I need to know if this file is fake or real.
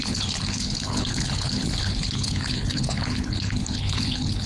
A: fake